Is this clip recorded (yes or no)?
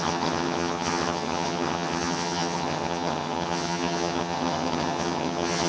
no